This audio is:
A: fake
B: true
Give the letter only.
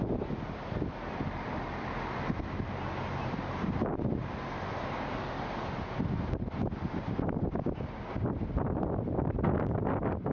B